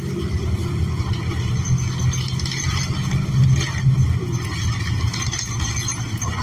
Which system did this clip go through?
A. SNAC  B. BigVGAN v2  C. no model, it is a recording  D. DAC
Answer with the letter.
C